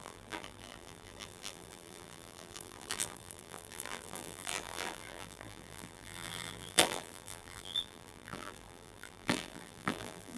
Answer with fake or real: fake